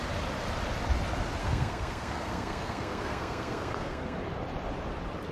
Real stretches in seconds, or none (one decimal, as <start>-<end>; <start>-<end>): 0.0-1.4; 4.2-5.3